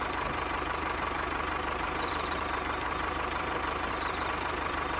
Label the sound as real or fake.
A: fake